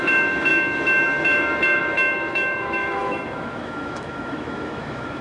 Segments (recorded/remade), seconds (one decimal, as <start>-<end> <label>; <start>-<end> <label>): 0.0-5.2 remade